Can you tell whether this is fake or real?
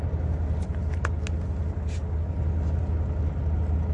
real